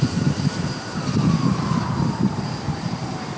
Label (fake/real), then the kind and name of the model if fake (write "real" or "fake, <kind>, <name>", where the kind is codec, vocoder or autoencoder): fake, vocoder, BigVGAN v2